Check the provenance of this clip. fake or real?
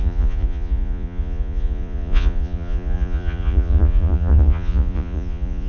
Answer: fake